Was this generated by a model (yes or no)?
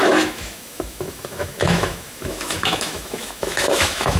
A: yes